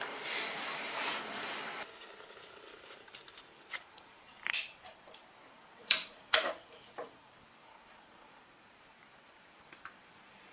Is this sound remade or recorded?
remade